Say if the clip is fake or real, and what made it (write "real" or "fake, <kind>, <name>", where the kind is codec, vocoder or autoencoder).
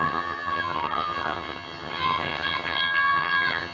fake, vocoder, HiFi-GAN